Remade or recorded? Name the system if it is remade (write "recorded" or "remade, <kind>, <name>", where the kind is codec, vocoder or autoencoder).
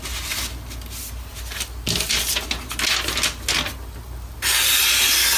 recorded